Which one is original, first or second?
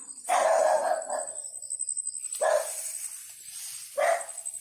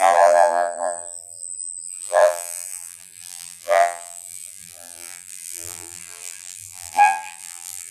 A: first